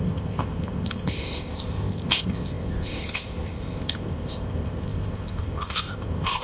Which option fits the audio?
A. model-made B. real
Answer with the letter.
A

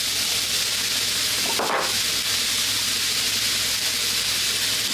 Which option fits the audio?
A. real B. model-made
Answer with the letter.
A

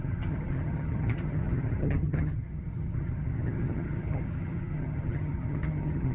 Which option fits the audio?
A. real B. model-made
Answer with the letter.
B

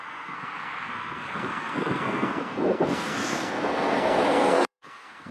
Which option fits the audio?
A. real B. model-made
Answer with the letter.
B